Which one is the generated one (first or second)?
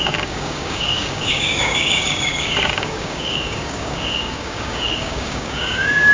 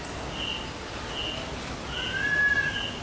first